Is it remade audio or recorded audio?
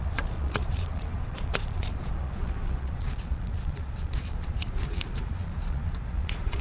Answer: remade